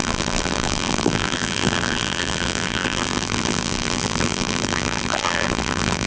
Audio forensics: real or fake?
fake